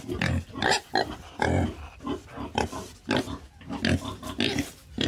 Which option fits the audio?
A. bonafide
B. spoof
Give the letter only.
A